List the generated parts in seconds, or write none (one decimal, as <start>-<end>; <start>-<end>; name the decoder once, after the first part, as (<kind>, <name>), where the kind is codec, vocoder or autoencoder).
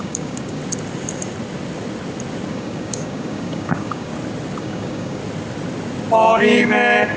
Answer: 0.0-0.6 (codec, DAC); 2.5-4.1; 4.6-5.2; 6.3-7.2